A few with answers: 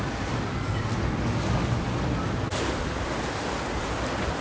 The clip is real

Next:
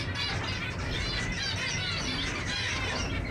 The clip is real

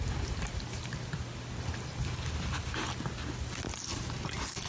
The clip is real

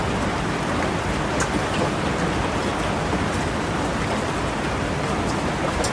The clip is real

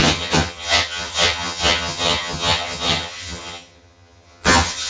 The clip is fake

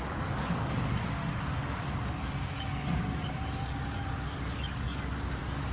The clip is fake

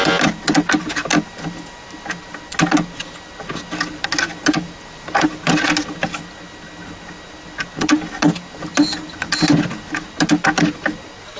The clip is real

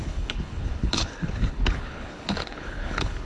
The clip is fake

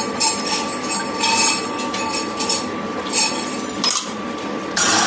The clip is real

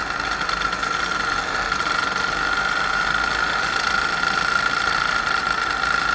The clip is real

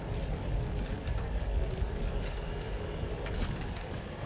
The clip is fake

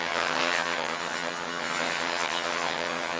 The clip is fake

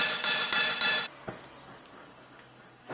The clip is real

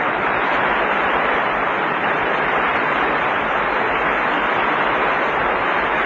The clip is real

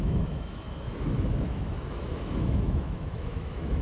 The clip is fake